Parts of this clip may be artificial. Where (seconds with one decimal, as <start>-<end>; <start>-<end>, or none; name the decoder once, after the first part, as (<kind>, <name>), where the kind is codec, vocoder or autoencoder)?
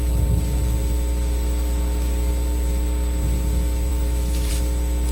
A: 3.9-4.5 (autoencoder, DAC-VAE)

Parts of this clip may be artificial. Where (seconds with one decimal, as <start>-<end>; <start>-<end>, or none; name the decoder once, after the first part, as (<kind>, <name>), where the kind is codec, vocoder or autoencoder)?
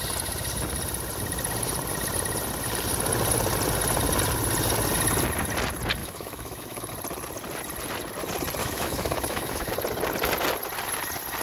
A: 6.0-6.9 (autoencoder, DAC-VAE); 8.6-9.7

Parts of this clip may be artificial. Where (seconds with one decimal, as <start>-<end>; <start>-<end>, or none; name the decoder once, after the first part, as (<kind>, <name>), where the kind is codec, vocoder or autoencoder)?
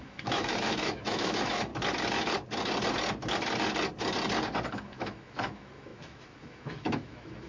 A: 0.0-1.7 (autoencoder, DAC-VAE); 4.7-7.5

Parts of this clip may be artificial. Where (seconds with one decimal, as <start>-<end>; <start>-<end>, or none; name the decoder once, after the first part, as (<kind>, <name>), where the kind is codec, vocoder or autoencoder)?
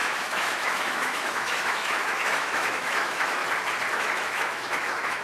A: 0.0-3.4 (autoencoder, DAC-VAE); 3.9-5.2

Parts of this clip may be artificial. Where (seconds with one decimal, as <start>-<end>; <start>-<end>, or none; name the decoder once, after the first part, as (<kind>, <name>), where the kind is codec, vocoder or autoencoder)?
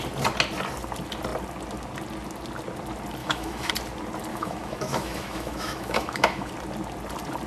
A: 3.2-3.7 (autoencoder, DAC-VAE); 4.3-6.5